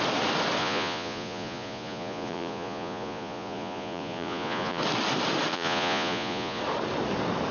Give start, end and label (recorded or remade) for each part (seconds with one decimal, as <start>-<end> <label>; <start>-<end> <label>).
0.0-0.6 recorded; 0.6-4.8 remade; 4.8-5.5 recorded; 5.5-6.6 remade; 6.6-7.5 recorded